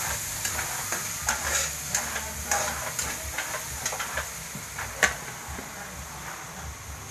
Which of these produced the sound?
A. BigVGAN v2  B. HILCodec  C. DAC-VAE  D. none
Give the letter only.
D